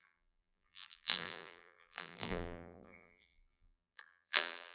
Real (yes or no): no